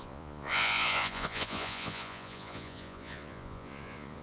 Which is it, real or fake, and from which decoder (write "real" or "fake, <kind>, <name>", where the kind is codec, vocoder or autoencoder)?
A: fake, vocoder, Vocos